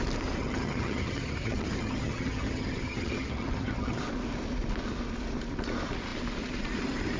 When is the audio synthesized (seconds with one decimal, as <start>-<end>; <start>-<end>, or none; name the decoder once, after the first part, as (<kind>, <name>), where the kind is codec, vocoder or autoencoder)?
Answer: 0.4-4.0 (vocoder, HiFi-GAN)